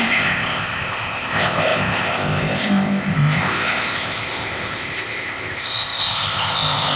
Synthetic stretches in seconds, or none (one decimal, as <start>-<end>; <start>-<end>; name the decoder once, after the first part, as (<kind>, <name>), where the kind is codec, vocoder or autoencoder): 0.0-7.0 (codec, ZipCodec)